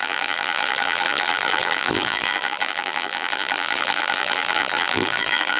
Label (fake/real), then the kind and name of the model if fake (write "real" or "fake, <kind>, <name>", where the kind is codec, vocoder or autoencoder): fake, vocoder, BigVGAN v2